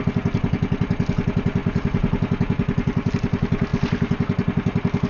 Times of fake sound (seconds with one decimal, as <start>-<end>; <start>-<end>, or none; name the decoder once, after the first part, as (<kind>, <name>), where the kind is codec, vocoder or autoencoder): none